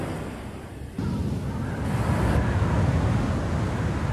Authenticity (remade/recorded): recorded